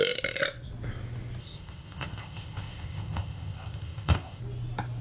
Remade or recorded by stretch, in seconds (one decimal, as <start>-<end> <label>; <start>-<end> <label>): 0.0-1.4 recorded; 1.4-4.4 remade; 4.4-5.0 recorded